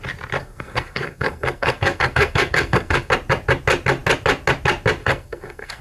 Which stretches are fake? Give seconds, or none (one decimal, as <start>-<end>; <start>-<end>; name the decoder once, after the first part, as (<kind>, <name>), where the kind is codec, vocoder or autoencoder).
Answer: 0.4-3.1 (codec, SNAC); 5.0-5.8